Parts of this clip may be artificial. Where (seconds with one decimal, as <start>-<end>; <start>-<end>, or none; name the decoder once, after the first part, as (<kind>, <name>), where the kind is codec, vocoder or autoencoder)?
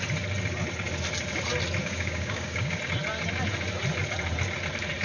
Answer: 1.8-2.8 (codec, DAC)